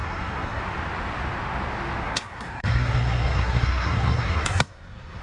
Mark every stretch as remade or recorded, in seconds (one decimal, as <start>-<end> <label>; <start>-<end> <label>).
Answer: 0.0-0.6 remade; 0.6-2.0 recorded; 2.0-5.2 remade